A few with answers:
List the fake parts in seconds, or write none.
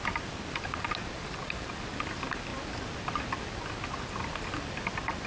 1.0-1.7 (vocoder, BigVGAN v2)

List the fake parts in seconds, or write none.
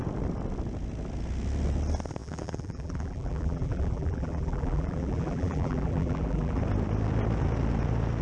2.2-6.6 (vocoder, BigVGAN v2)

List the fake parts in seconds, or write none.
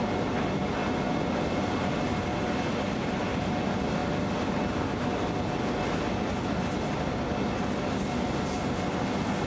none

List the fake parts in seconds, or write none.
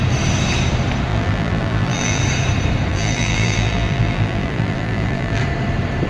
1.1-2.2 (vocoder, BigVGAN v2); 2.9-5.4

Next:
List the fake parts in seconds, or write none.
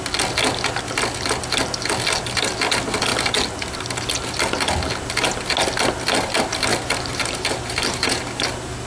6.7-8.2 (vocoder, BigVGAN v2)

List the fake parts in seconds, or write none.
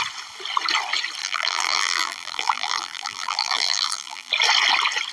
1.2-4.3 (vocoder, BigVGAN v2)